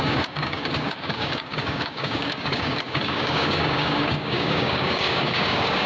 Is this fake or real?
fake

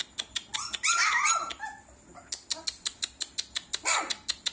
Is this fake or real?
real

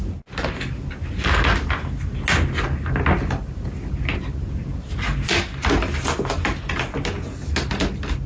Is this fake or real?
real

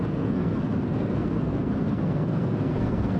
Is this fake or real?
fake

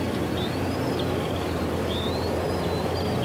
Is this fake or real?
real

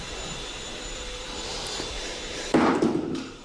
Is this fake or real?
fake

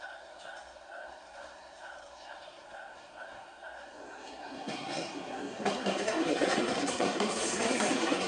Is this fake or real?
fake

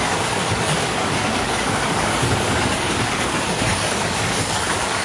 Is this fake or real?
fake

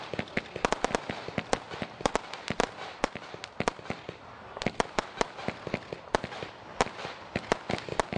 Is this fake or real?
real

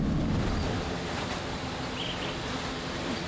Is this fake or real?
real